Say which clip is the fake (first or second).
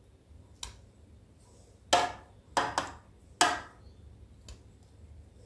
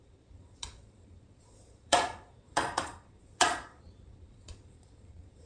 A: second